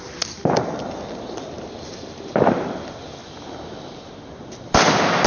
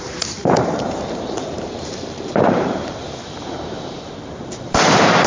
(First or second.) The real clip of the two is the first